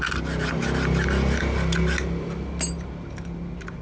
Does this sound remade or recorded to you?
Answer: recorded